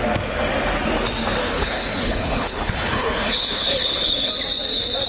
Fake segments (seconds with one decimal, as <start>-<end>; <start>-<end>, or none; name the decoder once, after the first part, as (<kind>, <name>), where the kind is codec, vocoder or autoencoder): 1.4-4.3 (codec, HILCodec)